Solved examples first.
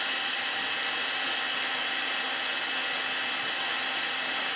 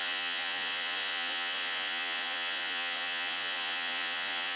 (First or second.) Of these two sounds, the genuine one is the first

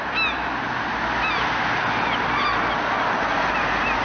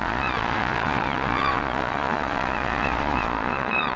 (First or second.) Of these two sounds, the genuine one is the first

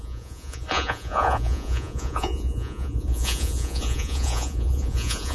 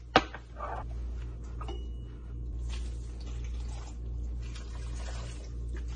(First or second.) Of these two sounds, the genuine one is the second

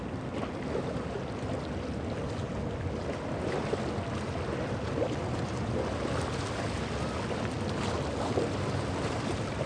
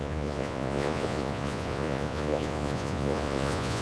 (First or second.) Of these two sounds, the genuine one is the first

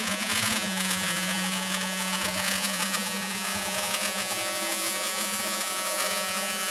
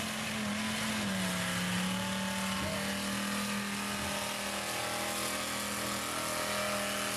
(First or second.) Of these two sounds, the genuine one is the second